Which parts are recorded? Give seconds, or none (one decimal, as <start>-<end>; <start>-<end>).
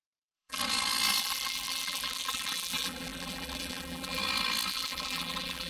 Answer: 0.6-1.2; 4.2-4.7